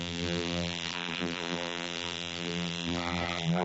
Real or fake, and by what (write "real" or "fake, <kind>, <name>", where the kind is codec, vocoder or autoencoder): fake, vocoder, BigVGAN v2